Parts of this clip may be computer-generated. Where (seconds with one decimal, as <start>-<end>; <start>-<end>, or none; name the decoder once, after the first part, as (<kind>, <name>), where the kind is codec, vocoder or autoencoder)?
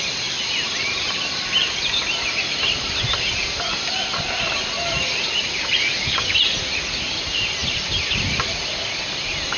7.6-9.0 (vocoder, BigVGAN v2)